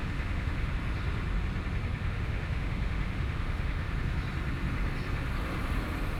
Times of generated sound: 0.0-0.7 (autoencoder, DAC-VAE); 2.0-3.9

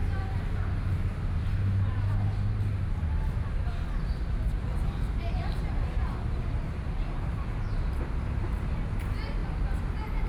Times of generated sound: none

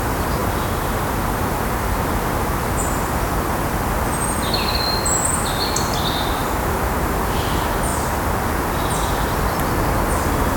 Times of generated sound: none

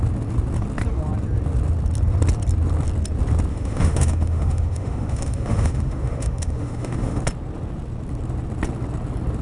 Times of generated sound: 3.5-7.2 (autoencoder, DAC-VAE)

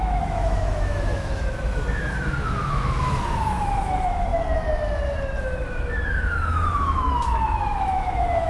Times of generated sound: 0.0-4.3 (autoencoder, DAC-VAE); 5.4-8.5

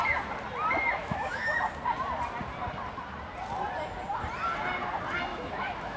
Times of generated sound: 1.0-1.5 (autoencoder, DAC-VAE); 5.3-6.0

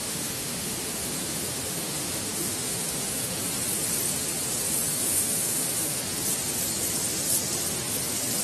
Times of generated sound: 0.0-3.4 (autoencoder, DAC-VAE); 4.9-6.0